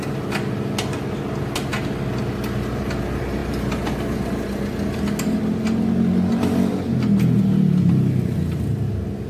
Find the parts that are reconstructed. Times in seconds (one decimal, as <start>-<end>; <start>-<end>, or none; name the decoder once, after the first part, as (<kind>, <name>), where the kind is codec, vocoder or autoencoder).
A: none